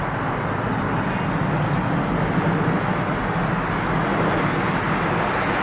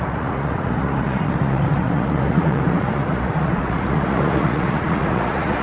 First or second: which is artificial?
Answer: second